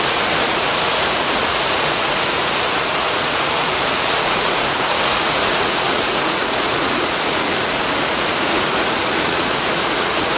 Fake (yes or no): yes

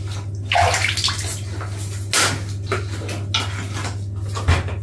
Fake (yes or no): no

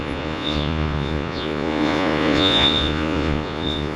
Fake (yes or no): yes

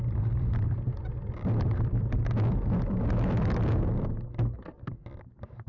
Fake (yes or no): no